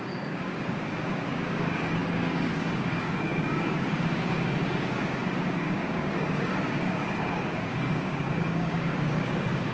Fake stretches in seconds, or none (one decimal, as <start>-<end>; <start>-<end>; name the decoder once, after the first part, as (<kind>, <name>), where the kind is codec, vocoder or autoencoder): 0.0-9.7 (codec, DAC)